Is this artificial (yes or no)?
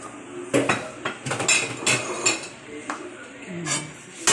no